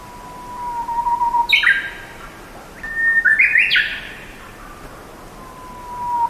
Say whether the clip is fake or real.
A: real